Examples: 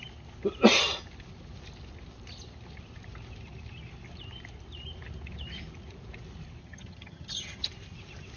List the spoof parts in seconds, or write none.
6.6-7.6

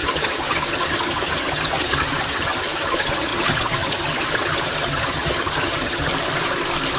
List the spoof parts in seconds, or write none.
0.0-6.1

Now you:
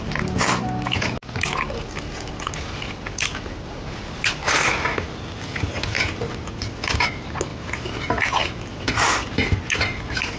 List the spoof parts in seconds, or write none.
none